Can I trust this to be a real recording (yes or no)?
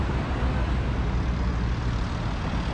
yes